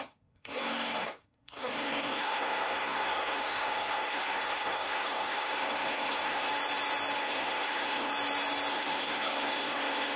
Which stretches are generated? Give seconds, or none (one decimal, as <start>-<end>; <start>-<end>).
0.0-6.5; 7.2-8.1; 8.7-10.2